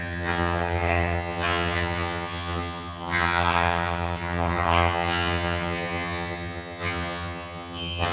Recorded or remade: remade